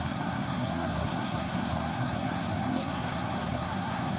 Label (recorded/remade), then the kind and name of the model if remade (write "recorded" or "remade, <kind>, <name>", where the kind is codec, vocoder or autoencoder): remade, codec, SNAC